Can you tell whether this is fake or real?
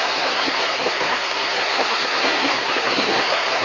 fake